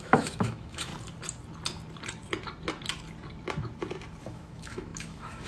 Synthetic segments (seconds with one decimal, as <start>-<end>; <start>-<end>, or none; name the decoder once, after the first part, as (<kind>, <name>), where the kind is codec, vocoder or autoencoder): 0.0-0.9 (autoencoder, DAC-VAE); 4.2-5.5